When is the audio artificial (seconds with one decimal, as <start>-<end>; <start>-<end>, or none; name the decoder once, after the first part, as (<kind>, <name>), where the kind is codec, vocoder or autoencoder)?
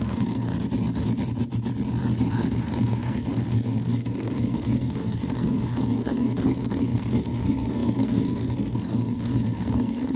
0.0-0.5 (codec, SNAC); 2.3-10.2